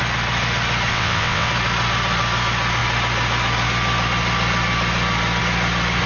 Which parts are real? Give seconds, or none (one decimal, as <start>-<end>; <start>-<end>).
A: 0.0-0.9; 1.5-6.1